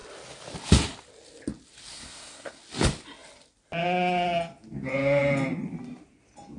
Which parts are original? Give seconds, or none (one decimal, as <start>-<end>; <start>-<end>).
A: 0.0-1.9; 2.6-6.6

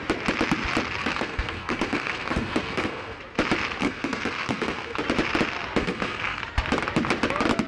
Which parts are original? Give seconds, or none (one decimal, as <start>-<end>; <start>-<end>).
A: 0.0-1.0; 3.2-3.8; 5.0-5.8; 6.4-7.7

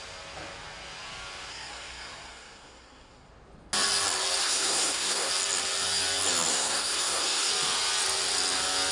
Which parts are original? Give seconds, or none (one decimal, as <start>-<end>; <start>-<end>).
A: 0.0-1.5; 3.3-4.4; 5.3-6.5; 7.5-8.9

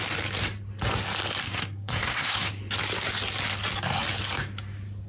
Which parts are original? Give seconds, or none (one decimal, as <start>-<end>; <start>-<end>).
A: 0.0-1.4; 2.6-5.1

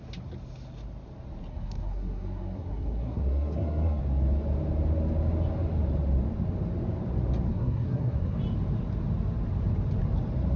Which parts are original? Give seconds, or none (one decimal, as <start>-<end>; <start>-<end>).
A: 0.0-1.5; 4.0-7.5; 8.4-10.6

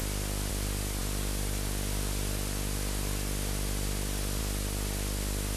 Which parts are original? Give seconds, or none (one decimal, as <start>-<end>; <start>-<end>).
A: 0.0-5.6